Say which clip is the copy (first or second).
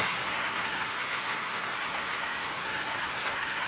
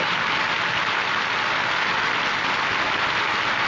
first